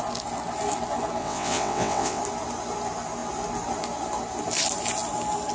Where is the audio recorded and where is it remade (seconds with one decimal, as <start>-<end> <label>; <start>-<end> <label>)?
0.0-1.2 recorded; 1.2-2.2 remade; 2.2-5.5 recorded